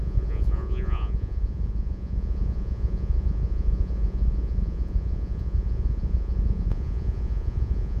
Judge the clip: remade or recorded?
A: remade